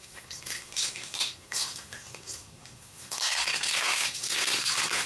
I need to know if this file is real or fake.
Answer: fake